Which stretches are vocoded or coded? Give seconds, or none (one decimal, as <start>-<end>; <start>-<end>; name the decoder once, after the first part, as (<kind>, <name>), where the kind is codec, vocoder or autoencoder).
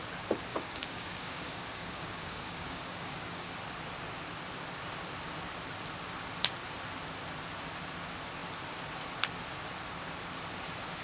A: 0.5-3.5 (codec, DAC)